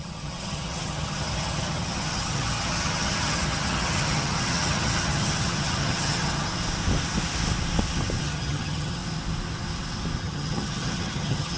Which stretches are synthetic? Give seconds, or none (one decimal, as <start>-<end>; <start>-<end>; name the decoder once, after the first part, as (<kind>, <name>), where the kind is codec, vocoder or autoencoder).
0.0-6.5 (vocoder, HiFi-GAN); 8.2-9.0; 10.2-11.6